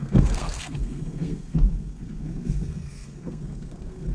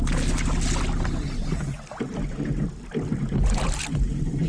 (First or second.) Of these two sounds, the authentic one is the second